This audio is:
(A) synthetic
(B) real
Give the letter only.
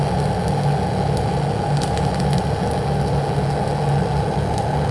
B